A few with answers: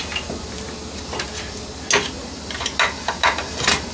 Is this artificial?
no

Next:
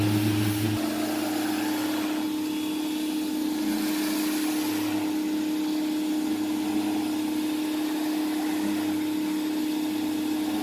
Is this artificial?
no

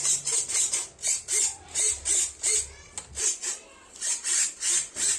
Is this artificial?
no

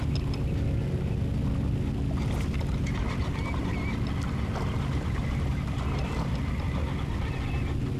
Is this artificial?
no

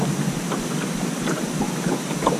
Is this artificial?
no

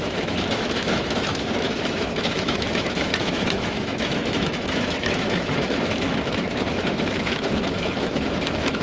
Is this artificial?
yes